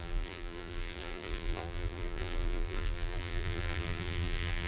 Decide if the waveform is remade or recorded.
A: remade